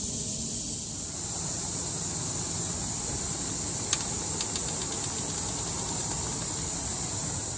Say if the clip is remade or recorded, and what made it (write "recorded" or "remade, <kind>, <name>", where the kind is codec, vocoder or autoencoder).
recorded